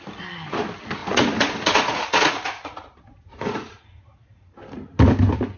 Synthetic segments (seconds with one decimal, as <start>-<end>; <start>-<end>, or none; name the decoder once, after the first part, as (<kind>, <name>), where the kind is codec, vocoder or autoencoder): 1.0-4.4 (vocoder, Vocos)